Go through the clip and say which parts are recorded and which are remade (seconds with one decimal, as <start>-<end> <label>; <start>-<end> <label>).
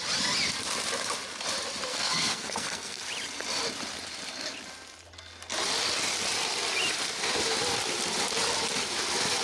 0.0-1.9 recorded; 1.9-3.0 remade; 3.0-9.4 recorded